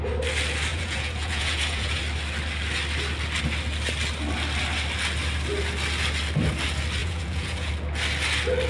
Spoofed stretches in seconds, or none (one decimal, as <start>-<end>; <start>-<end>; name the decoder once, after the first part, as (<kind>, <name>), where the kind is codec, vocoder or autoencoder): 0.7-2.0 (vocoder, Vocos); 7.0-7.7